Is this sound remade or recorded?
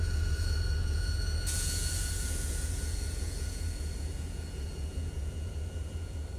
remade